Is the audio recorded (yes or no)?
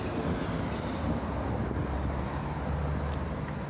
yes